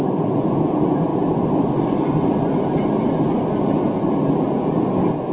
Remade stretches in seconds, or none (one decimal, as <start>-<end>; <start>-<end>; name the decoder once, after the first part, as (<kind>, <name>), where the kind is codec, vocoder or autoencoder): 0.0-1.1 (vocoder, Vocos); 4.3-5.3